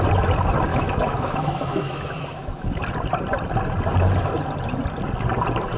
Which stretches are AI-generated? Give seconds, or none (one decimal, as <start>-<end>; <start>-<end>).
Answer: 0.7-2.8